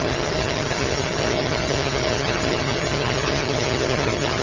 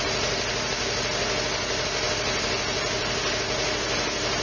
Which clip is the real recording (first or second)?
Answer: second